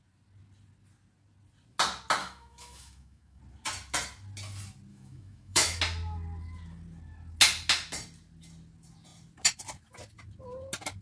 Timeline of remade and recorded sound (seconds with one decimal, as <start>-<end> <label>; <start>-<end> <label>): 0.0-2.2 recorded; 2.2-3.4 remade; 3.4-4.9 recorded; 4.9-5.8 remade; 5.8-11.0 recorded